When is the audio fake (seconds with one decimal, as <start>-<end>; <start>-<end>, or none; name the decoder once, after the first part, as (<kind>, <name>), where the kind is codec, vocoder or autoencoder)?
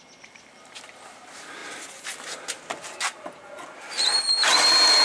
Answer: none